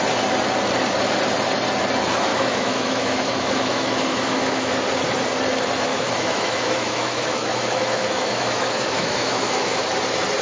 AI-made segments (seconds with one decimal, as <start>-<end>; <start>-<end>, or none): 2.3-4.7; 5.9-9.8

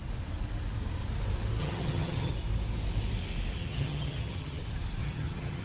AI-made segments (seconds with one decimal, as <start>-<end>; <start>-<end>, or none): 1.6-2.3; 3.6-4.6; 5.0-5.6

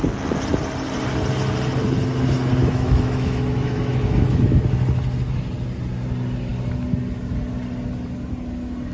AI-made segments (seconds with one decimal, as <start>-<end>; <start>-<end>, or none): 2.6-4.4

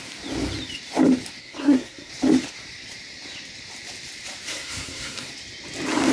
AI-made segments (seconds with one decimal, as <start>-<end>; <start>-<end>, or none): 1.4-2.1; 4.5-5.3

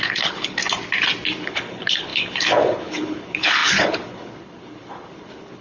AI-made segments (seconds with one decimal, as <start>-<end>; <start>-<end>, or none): 0.0-0.6; 1.4-5.6